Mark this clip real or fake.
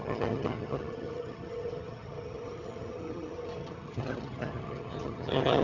fake